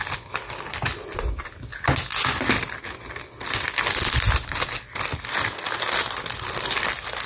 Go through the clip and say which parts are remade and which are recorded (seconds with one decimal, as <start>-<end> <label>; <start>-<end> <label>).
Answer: 0.0-7.3 recorded